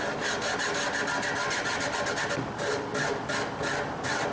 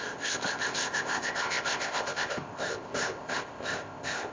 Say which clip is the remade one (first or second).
second